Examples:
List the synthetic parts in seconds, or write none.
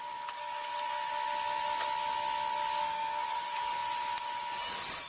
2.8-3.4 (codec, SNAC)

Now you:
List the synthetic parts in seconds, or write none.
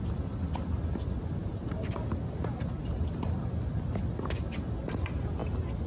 1.4-1.9 (vocoder, BigVGAN v2); 2.8-3.4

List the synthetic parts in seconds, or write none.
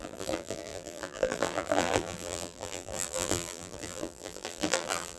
0.0-5.2 (vocoder, BigVGAN v2)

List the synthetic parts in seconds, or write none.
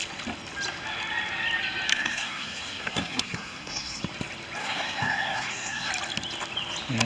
1.9-4.0 (codec, SNAC); 4.6-5.9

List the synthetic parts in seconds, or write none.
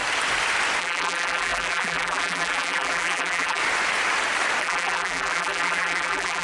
0.8-3.6 (vocoder, BigVGAN v2); 4.6-6.4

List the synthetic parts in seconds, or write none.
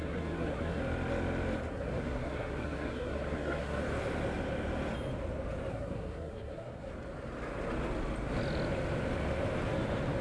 0.0-0.8 (codec, SNAC); 1.7-3.8; 5.7-6.9